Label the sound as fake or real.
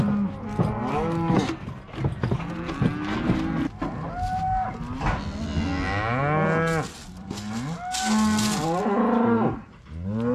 real